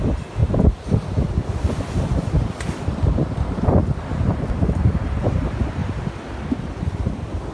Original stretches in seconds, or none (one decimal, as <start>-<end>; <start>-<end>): 5.8-6.6